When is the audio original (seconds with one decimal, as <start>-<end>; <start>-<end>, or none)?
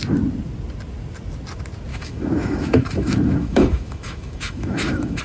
0.0-1.9